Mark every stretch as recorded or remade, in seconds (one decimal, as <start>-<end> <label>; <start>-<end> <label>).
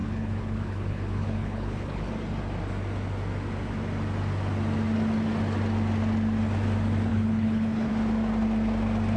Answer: 0.0-2.1 remade; 2.1-7.1 recorded; 7.1-7.9 remade; 7.9-9.2 recorded